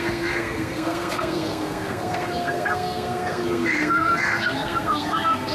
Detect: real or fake fake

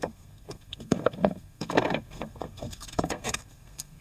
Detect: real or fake fake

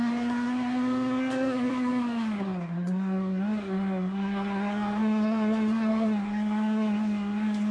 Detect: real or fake fake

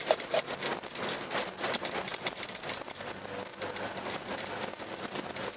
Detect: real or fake real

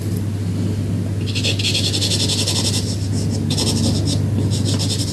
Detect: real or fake real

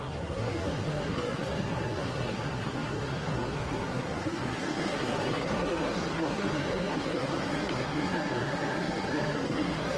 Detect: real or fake fake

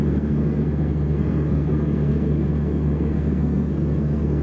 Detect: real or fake fake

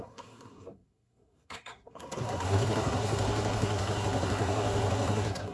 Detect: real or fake fake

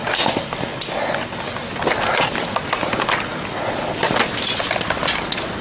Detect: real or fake real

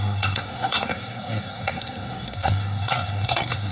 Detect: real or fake fake